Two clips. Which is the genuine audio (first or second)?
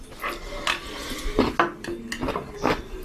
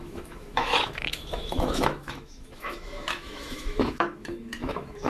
first